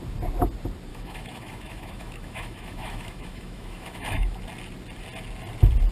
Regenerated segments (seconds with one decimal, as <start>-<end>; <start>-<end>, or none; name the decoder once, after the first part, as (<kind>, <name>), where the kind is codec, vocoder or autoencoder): 0.9-4.4 (autoencoder, DAC-VAE)